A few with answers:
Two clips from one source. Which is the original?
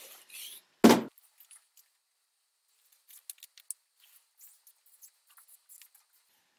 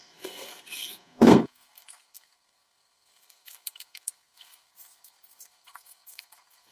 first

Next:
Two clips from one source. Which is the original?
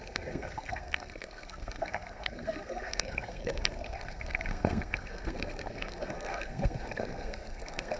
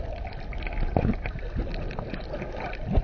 second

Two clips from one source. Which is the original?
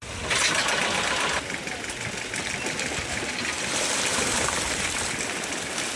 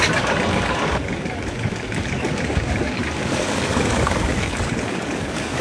first